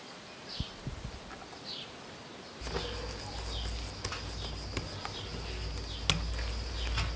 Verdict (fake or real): real